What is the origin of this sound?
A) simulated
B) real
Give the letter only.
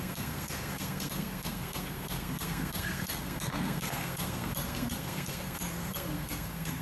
A